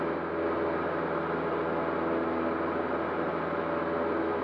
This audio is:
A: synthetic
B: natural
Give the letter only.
B